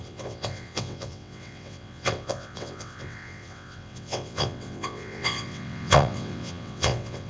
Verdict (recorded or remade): remade